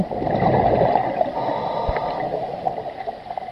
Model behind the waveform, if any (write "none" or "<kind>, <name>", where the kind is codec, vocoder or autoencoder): none